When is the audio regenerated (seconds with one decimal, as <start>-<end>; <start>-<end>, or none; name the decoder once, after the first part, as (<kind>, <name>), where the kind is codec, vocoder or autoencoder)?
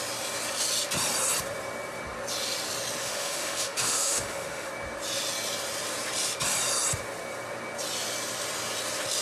3.0-4.7 (autoencoder, DAC-VAE)